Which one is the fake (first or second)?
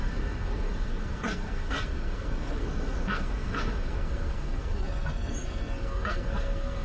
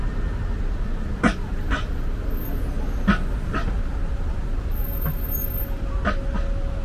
first